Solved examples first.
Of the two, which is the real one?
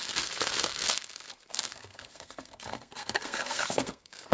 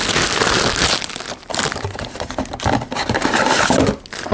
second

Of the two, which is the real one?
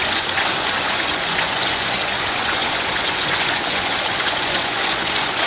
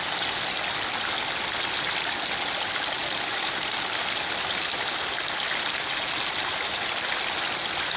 second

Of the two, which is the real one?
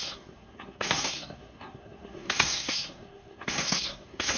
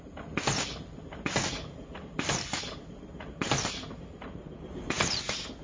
second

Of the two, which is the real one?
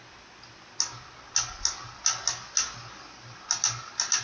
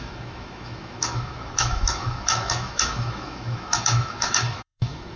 first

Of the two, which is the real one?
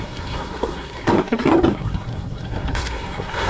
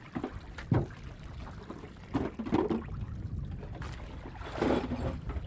second